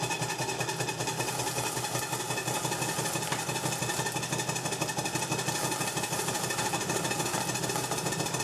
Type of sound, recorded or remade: recorded